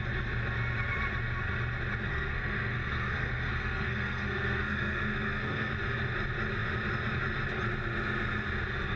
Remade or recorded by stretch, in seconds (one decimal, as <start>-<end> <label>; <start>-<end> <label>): 0.0-2.1 recorded; 2.1-5.7 remade; 5.7-9.0 recorded